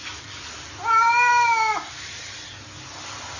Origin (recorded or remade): recorded